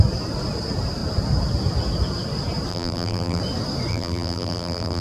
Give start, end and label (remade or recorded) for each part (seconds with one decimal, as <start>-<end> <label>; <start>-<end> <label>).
0.0-2.7 recorded; 2.7-3.4 remade; 3.4-3.9 recorded; 3.9-5.0 remade